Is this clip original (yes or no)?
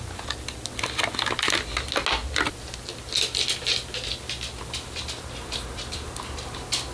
yes